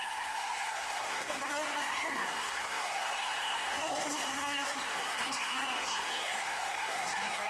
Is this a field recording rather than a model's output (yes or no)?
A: no